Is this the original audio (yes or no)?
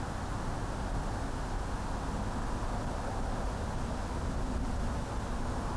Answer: yes